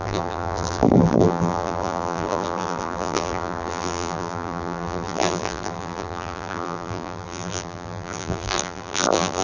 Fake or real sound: fake